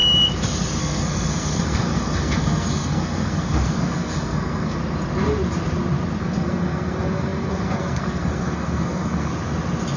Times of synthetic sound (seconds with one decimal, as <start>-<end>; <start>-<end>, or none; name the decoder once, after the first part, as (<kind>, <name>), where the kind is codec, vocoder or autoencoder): 0.8-4.8 (codec, SNAC); 6.2-9.3